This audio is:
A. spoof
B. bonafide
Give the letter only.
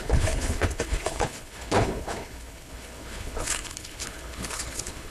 A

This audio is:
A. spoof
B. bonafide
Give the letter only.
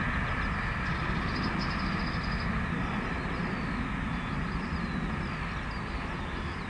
B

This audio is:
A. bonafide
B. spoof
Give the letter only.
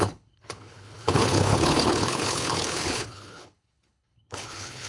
B